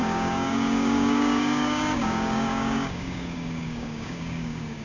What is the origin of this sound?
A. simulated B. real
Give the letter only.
A